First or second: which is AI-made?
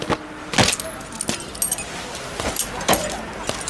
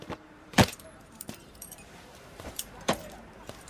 second